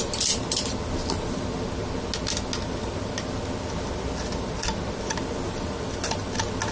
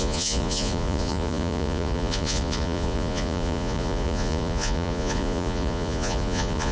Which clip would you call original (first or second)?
first